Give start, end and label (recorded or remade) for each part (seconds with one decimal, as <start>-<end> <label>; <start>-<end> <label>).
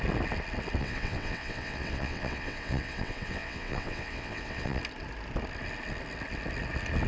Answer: 0.0-0.8 recorded; 0.8-4.8 remade; 4.8-7.1 recorded